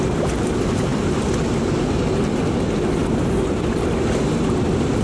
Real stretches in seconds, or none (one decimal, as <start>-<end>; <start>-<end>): 0.0-5.0